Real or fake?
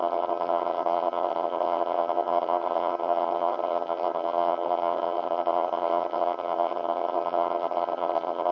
fake